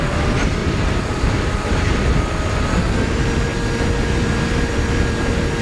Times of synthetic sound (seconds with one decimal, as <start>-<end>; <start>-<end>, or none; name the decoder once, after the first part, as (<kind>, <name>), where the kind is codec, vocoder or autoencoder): 0.6-2.2 (vocoder, BigVGAN v2)